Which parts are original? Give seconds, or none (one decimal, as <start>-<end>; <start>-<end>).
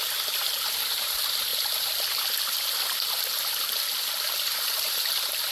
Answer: 0.0-5.5